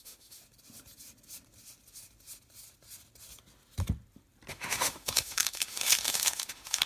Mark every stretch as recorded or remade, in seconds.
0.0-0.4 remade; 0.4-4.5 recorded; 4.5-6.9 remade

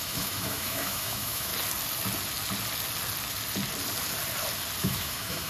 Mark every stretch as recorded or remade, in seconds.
0.0-1.5 remade; 1.5-4.8 recorded; 4.8-5.5 remade

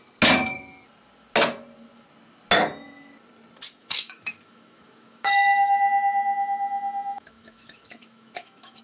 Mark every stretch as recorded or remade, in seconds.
0.0-3.8 recorded; 3.8-8.8 remade

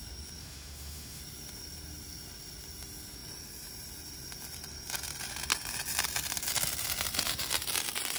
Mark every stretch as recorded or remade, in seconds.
0.0-0.4 recorded; 0.4-1.2 remade; 1.2-8.2 recorded

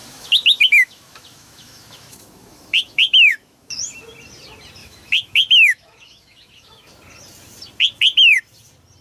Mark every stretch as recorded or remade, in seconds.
0.0-4.0 remade; 4.0-4.8 recorded; 4.8-6.9 remade; 6.9-9.0 recorded

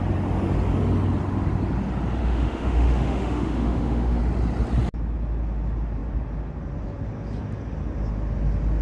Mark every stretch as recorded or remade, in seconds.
0.0-2.2 recorded; 2.2-4.2 remade; 4.2-8.8 recorded

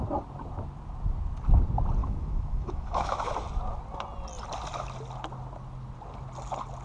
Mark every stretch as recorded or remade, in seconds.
0.0-2.0 recorded; 2.0-3.3 remade; 3.3-6.8 recorded

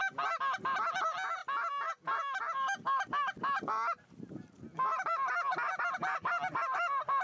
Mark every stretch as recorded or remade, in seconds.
0.0-7.2 recorded